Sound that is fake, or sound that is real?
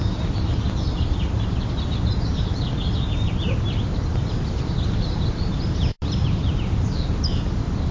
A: real